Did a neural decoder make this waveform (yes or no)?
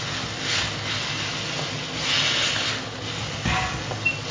no